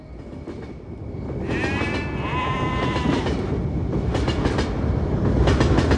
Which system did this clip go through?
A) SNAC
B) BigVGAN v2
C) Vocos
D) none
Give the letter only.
D